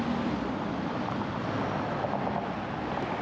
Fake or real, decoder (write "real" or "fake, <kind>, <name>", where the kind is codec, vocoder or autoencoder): real